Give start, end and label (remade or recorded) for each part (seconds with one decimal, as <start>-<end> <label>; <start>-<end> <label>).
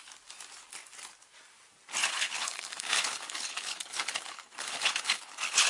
0.0-2.0 recorded; 2.0-5.7 remade